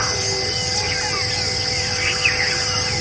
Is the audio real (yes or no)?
yes